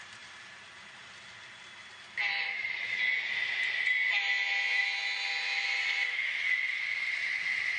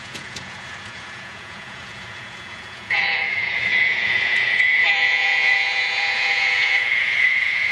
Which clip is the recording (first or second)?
first